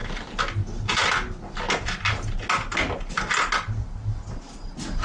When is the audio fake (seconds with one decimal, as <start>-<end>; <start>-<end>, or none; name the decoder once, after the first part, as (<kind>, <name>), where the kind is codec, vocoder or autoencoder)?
none